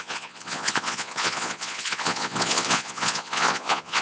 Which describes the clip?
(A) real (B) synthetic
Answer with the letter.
B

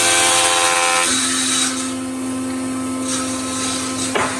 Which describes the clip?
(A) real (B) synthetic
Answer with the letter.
A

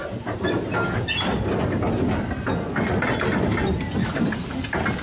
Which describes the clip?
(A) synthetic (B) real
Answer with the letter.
B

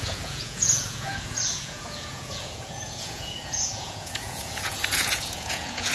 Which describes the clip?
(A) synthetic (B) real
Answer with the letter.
A